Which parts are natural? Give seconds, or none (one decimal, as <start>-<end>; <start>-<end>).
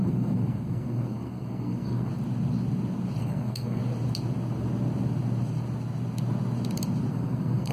2.1-3.2; 3.8-7.1